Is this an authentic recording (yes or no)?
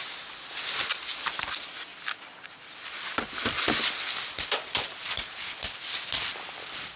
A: yes